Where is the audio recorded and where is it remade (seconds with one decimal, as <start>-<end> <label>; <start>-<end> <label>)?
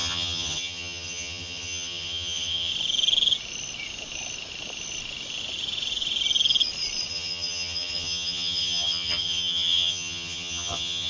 0.0-2.7 remade; 2.7-7.1 recorded; 7.1-11.1 remade